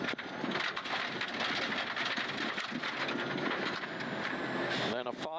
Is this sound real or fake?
real